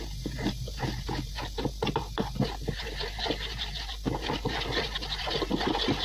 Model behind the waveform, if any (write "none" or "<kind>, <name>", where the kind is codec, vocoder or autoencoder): none